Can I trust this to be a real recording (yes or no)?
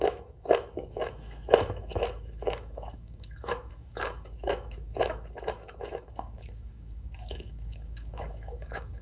no